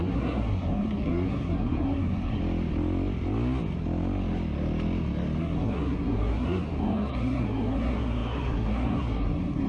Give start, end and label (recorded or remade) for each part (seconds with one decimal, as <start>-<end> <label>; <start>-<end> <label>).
0.0-2.4 remade; 2.4-5.4 recorded; 5.4-9.7 remade